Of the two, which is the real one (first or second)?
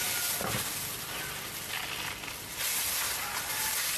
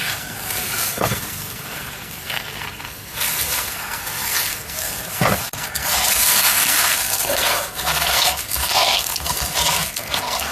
first